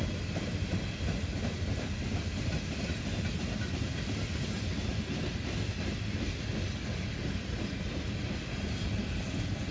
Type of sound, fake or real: real